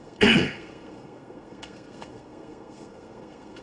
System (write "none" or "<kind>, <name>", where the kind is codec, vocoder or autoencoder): codec, SNAC